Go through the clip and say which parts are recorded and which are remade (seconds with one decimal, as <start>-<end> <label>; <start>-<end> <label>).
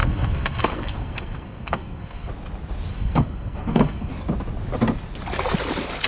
0.0-2.3 remade; 2.3-2.9 recorded; 2.9-4.1 remade; 4.1-6.1 recorded